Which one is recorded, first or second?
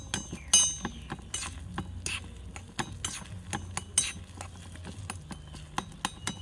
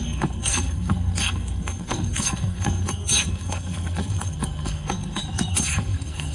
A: first